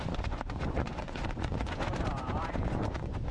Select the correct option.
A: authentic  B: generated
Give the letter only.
B